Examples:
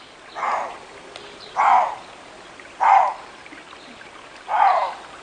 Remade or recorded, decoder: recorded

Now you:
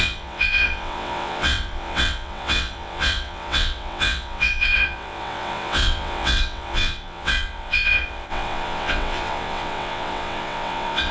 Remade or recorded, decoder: remade, vocoder, WaveNeXt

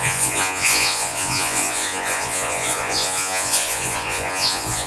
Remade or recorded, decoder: remade, vocoder, Vocos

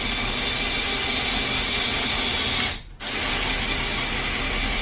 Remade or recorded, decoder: recorded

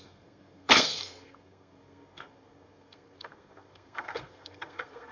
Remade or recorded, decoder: remade, codec, SNAC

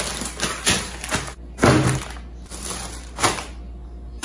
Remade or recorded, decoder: recorded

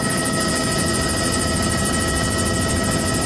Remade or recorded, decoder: recorded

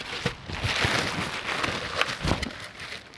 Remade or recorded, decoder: recorded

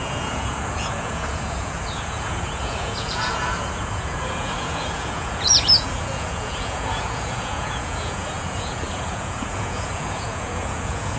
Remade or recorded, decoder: remade, vocoder, Vocos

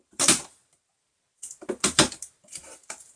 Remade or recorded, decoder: remade, vocoder, BigVGAN v2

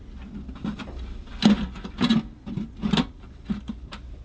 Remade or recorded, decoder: recorded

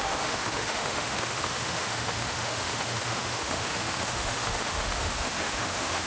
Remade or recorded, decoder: remade, autoencoder, DAC-VAE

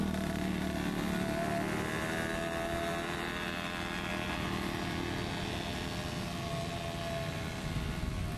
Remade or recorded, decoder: recorded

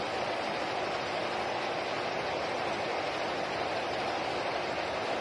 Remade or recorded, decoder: recorded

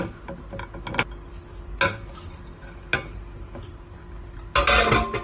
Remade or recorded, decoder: recorded